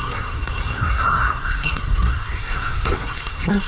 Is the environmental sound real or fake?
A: fake